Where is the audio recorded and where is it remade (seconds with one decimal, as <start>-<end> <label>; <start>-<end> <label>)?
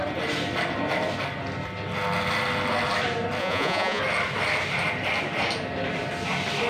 0.0-3.4 recorded; 3.4-4.0 remade; 4.0-6.7 recorded